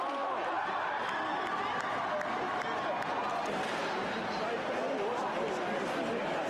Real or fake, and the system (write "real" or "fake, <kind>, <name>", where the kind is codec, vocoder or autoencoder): real